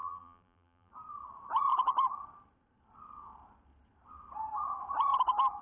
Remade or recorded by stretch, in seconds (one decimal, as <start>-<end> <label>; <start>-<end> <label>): 0.0-0.9 remade; 0.9-5.6 recorded